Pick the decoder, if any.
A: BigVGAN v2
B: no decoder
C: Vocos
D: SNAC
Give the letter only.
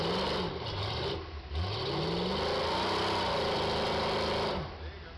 B